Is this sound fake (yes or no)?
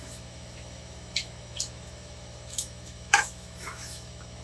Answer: yes